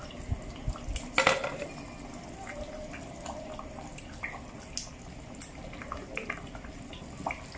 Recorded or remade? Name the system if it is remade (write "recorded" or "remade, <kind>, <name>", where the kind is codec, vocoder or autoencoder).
recorded